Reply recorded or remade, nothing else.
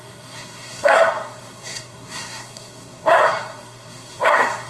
remade